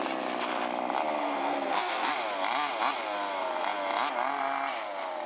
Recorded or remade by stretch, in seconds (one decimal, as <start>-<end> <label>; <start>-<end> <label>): 0.0-1.2 recorded; 1.2-2.1 remade; 2.1-5.3 recorded